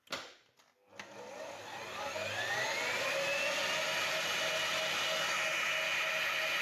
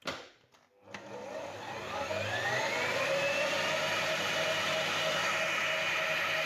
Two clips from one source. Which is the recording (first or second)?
first